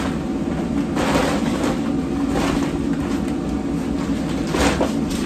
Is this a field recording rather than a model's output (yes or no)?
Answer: yes